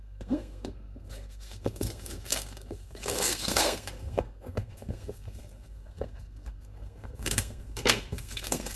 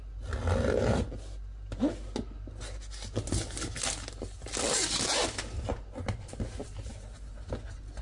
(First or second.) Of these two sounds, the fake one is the first